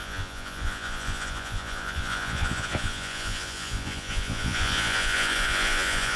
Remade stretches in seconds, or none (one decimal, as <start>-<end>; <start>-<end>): 0.0-6.2